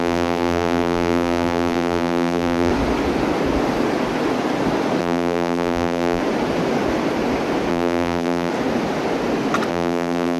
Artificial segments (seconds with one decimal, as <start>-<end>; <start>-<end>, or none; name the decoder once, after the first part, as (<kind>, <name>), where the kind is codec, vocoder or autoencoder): 0.0-2.7 (vocoder, BigVGAN v2); 5.0-6.2; 7.7-8.5; 9.7-10.4